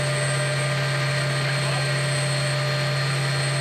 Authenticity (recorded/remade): recorded